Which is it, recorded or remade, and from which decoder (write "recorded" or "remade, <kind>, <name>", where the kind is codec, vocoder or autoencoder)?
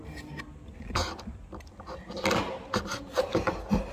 recorded